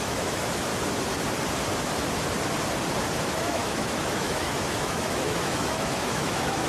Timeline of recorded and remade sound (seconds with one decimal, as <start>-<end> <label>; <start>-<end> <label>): 0.0-0.7 remade; 0.7-3.2 recorded; 3.2-6.7 remade